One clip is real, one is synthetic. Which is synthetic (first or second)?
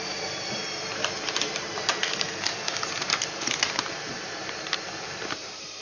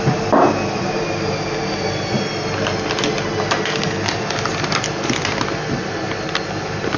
first